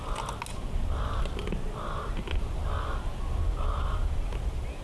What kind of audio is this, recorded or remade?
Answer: recorded